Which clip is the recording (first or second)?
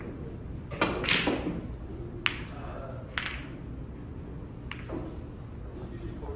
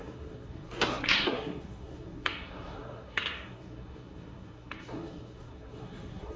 first